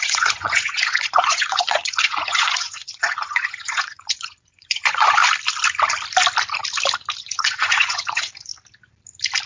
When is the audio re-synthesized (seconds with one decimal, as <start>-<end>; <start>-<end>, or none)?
0.0-5.2; 7.2-8.5